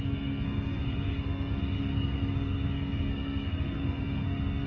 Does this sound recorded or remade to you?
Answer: remade